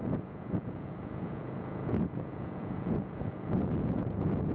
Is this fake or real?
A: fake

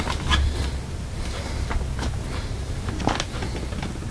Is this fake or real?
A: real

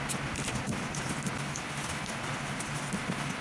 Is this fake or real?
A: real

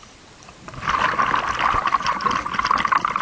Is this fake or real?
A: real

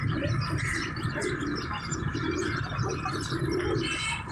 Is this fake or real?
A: real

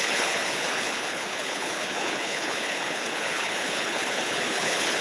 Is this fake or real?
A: fake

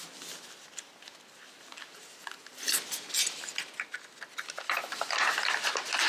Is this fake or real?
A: real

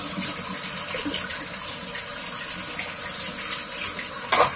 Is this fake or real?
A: real